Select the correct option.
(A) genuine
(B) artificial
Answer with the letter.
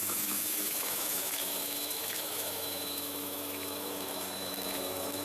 B